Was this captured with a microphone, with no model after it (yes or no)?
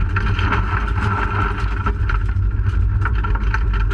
yes